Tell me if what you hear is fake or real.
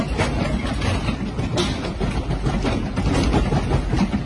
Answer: real